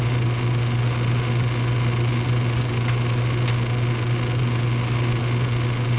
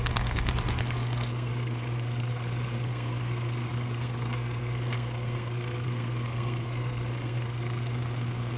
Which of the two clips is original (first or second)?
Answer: first